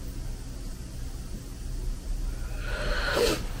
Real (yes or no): yes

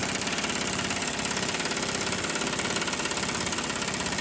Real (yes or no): yes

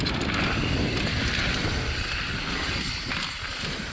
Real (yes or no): yes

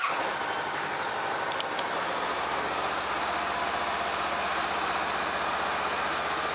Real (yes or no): yes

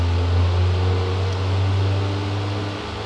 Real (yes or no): yes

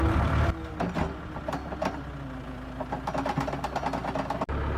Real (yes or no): yes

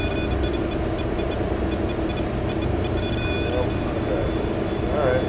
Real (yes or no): yes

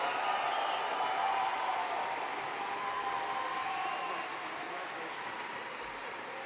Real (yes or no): yes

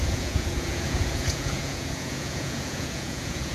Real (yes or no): no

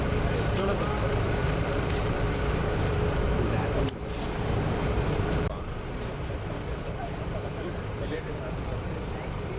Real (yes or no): no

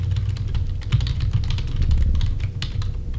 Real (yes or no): yes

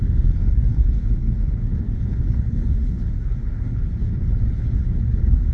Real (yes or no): no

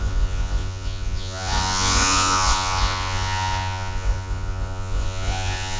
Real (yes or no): no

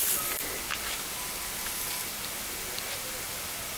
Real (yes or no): yes